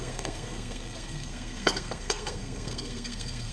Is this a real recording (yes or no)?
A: no